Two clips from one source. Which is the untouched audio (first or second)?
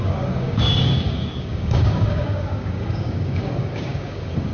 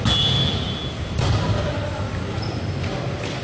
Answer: second